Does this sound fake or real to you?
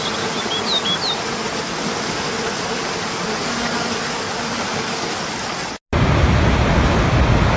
real